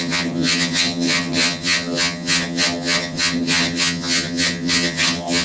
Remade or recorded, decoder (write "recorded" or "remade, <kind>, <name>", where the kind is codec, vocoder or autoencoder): remade, vocoder, HiFi-GAN